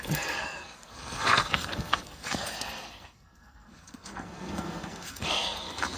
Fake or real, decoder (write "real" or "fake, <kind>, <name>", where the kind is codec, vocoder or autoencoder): fake, codec, SNAC